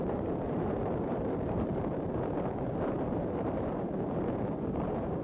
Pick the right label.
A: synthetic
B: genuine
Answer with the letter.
A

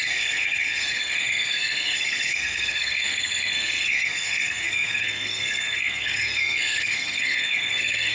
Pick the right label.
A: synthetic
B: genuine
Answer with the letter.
A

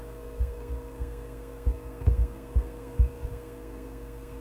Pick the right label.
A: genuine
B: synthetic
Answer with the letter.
B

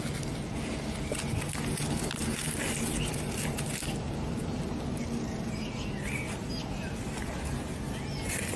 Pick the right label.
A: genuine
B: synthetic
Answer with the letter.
A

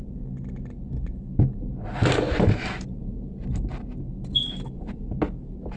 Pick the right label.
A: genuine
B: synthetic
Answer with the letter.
A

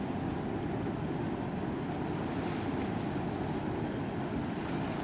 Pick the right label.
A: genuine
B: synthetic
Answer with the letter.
A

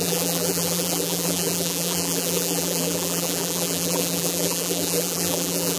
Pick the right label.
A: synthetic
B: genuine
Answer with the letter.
A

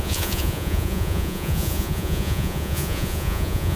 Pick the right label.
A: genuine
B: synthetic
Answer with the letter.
B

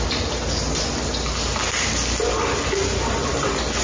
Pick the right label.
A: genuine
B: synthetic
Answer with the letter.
A